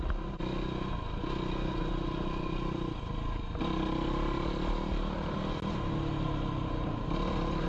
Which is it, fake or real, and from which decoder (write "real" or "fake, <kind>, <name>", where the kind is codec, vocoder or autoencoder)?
real